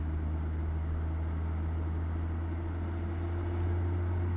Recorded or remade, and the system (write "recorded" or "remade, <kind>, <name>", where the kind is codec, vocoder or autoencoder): recorded